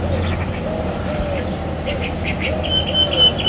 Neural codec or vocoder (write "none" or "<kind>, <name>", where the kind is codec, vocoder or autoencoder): none